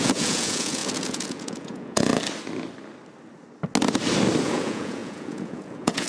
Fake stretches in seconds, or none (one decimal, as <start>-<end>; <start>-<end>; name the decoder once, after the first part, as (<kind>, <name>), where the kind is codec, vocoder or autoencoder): 0.0-2.1 (vocoder, Vocos); 4.4-6.1